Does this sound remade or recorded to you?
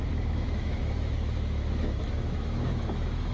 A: remade